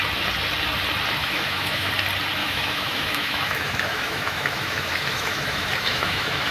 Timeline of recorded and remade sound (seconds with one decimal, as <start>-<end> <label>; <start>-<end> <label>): 0.0-1.2 recorded; 1.2-1.9 remade; 1.9-2.4 recorded; 2.4-6.5 remade